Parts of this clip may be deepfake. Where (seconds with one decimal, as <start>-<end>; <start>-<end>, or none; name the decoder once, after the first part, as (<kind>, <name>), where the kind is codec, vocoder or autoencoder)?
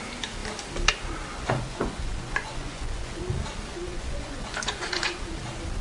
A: 1.3-3.2 (vocoder, Vocos); 3.7-5.2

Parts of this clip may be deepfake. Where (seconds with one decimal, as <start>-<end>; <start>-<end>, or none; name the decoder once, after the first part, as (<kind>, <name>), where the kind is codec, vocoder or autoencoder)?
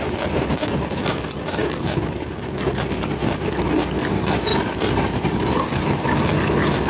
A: 4.5-6.2 (vocoder, BigVGAN v2)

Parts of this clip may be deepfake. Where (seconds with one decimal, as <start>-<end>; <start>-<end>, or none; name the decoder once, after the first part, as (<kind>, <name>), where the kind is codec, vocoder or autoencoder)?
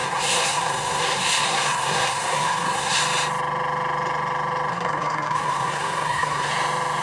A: 0.0-3.0 (codec, SNAC); 4.7-6.5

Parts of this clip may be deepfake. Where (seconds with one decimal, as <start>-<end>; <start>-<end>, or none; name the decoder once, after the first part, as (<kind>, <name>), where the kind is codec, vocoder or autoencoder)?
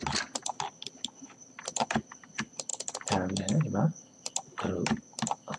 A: none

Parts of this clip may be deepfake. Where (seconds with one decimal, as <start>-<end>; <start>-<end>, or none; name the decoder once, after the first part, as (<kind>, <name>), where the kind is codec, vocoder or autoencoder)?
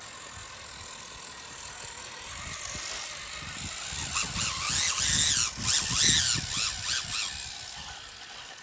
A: 0.4-4.1 (vocoder, BigVGAN v2)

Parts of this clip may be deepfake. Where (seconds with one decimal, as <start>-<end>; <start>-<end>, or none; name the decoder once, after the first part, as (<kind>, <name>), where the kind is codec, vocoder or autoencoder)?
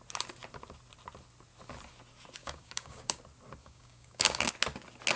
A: 2.4-3.2 (codec, DAC); 3.6-4.5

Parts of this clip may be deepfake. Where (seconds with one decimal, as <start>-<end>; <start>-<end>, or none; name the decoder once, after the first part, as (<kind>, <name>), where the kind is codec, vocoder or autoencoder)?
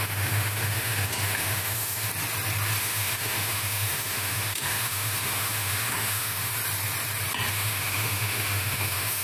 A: 0.0-2.1 (autoencoder, DAC-VAE); 2.8-6.5; 7.5-9.2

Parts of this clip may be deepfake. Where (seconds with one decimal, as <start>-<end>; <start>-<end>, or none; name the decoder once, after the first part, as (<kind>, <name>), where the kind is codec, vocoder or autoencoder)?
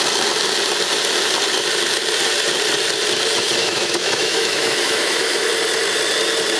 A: 3.6-5.5 (autoencoder, DAC-VAE)